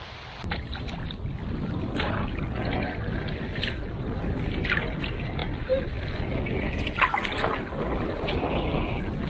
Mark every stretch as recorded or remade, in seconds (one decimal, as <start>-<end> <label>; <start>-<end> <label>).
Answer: 0.0-9.3 recorded